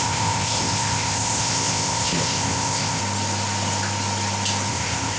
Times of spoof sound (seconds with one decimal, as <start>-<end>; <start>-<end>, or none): 0.0-3.0; 4.7-5.2